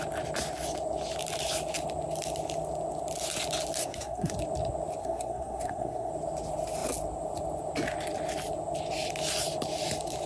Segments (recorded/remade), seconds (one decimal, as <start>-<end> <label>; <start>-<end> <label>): 0.0-3.8 recorded; 3.8-4.3 remade; 4.3-5.0 recorded; 5.0-6.1 remade; 6.1-10.3 recorded